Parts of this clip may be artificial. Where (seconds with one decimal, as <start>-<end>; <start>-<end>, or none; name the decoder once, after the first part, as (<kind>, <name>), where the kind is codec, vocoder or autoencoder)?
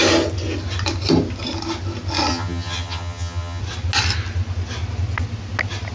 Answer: 2.3-3.6 (vocoder, HiFi-GAN)